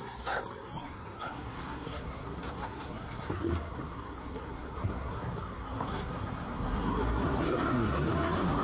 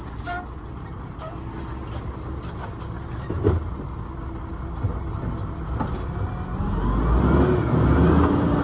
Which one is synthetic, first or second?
first